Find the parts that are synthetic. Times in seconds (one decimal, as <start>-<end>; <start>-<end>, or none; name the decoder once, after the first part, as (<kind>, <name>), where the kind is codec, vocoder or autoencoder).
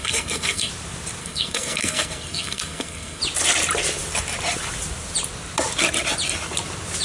0.0-0.7 (codec, SNAC); 1.2-3.2